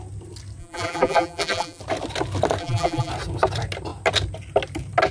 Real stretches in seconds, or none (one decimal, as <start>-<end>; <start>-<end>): 0.0-0.6; 1.8-2.6; 3.1-5.1